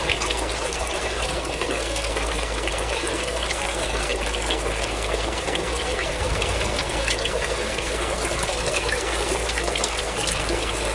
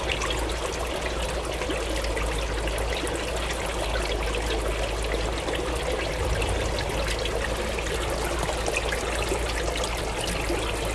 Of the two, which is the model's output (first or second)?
first